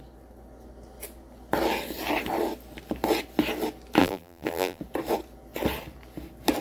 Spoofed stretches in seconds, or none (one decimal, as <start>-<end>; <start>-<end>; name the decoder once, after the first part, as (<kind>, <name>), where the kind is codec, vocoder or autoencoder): 4.0-4.8 (vocoder, BigVGAN v2)

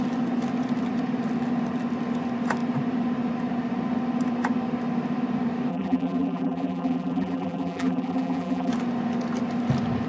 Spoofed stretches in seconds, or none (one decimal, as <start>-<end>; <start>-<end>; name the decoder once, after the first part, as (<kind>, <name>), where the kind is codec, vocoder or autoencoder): 5.7-8.7 (vocoder, BigVGAN v2)

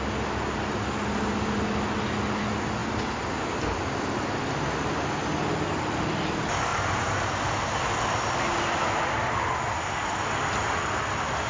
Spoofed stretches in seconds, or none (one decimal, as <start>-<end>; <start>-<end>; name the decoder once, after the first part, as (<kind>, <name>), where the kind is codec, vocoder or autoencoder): 6.7-7.4 (vocoder, BigVGAN v2)

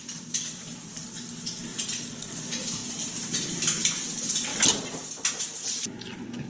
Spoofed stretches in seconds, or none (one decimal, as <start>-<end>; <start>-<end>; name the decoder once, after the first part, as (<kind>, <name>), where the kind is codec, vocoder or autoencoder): none

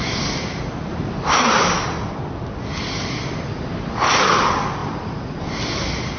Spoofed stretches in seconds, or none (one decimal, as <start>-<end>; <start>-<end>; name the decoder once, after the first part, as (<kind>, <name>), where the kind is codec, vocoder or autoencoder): 0.9-1.8 (vocoder, BigVGAN v2); 4.8-5.4

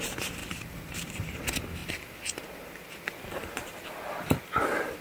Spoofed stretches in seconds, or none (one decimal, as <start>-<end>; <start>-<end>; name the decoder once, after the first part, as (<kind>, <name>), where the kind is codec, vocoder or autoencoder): 0.4-1.4 (vocoder, BigVGAN v2)

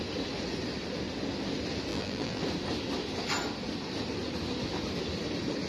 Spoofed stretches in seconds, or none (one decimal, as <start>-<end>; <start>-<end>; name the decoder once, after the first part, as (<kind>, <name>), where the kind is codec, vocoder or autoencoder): 1.9-2.4 (vocoder, BigVGAN v2)